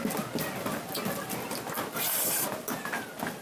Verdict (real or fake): real